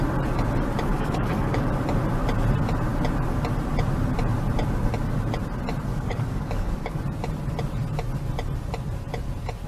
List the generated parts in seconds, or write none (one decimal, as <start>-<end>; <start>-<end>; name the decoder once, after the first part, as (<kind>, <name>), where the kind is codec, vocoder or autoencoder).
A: 0.9-1.7 (codec, DAC); 5.9-7.0